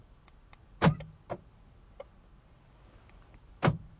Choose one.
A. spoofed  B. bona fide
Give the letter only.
B